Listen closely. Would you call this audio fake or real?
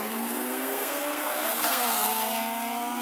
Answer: fake